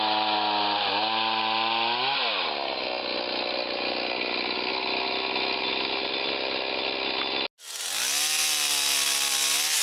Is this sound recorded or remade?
recorded